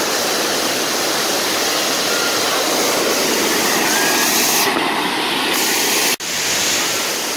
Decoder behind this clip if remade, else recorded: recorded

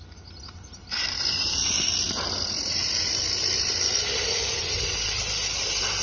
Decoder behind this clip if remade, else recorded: recorded